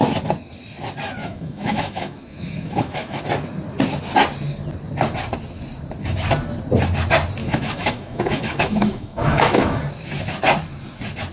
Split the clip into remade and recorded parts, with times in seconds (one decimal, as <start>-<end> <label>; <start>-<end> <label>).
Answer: 0.0-1.2 recorded; 1.2-3.2 remade; 3.2-7.4 recorded; 7.4-9.8 remade; 9.8-11.3 recorded